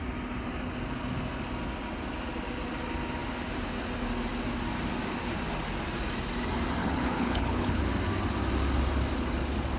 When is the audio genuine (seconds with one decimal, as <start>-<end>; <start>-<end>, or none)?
0.0-6.8; 7.8-9.8